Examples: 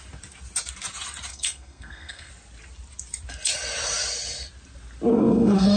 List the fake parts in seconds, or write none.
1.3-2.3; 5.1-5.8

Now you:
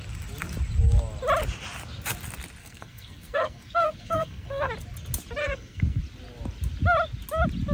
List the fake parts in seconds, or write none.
2.6-4.7; 5.4-6.0

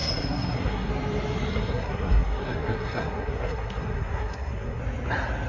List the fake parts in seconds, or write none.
0.0-0.9; 1.5-4.8

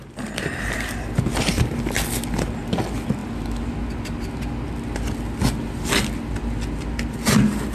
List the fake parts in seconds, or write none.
none

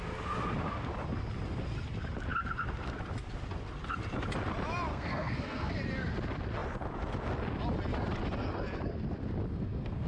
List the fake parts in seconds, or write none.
4.9-5.7; 9.5-10.1

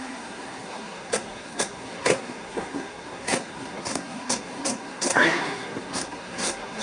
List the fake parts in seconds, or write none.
0.0-6.8